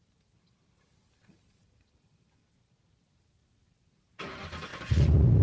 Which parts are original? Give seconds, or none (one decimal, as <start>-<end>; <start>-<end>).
0.0-4.7

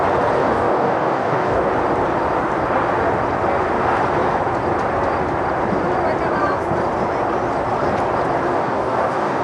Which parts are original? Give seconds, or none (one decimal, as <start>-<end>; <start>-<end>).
0.0-0.4; 1.6-8.5

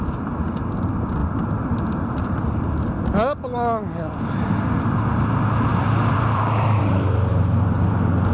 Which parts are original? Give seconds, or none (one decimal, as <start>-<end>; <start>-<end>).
0.0-1.2; 2.6-5.7; 7.9-8.3